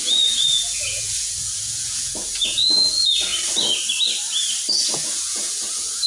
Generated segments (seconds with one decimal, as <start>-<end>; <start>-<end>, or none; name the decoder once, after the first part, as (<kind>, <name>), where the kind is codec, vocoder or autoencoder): 0.0-3.3 (vocoder, Vocos); 4.7-6.1